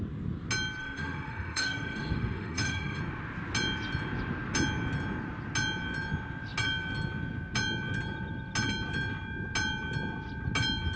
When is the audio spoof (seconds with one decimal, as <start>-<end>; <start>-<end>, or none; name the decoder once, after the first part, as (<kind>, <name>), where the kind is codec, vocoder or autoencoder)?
0.8-3.0 (autoencoder, DAC-VAE)